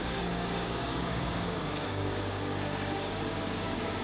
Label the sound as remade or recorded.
remade